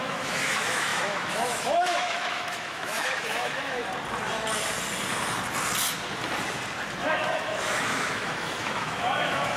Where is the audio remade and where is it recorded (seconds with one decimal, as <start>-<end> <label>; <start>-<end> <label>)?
0.0-3.8 remade; 3.8-7.0 recorded; 7.0-9.6 remade